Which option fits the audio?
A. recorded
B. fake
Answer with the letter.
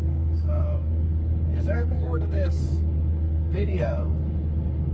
B